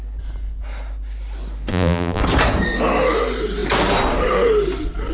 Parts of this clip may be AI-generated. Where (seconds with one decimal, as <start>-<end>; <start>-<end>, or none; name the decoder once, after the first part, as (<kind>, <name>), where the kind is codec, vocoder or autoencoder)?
1.7-2.2 (vocoder, BigVGAN v2)